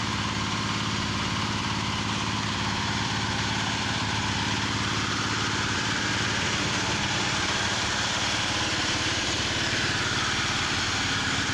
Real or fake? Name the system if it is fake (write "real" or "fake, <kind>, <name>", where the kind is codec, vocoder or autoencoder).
fake, vocoder, BigVGAN v2